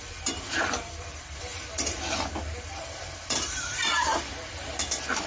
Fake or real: fake